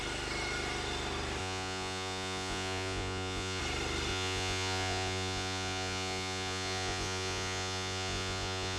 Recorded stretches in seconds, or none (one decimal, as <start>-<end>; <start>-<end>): 0.0-1.4; 3.6-4.1